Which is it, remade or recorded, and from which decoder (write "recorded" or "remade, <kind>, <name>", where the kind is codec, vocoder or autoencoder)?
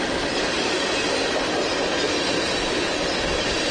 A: recorded